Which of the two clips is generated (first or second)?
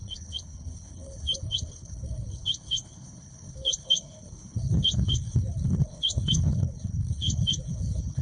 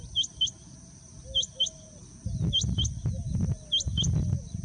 first